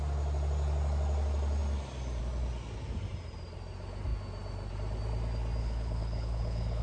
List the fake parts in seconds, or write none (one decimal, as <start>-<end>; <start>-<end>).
5.6-6.8